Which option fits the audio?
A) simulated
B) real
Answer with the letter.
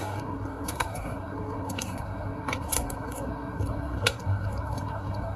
A